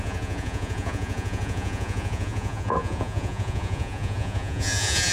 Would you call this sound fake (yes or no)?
yes